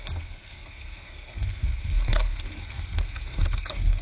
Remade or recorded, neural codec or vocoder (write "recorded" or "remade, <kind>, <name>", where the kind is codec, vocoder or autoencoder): remade, codec, SNAC